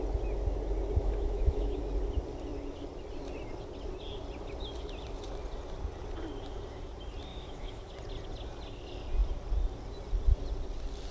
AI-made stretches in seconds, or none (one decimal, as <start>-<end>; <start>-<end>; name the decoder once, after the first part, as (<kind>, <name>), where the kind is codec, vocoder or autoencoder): 1.0-1.8 (autoencoder, DAC-VAE); 7.3-7.9